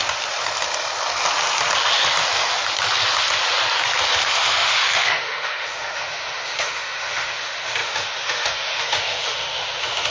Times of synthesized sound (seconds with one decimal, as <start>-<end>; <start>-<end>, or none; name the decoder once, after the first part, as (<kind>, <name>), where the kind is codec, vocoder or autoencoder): 4.2-10.1 (autoencoder, DAC-VAE)